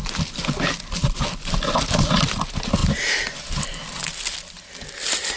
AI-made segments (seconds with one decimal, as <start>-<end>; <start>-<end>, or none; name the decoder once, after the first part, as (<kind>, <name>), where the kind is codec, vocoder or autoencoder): none